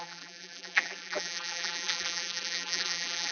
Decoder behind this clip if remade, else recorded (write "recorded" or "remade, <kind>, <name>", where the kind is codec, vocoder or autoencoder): remade, vocoder, BigVGAN v2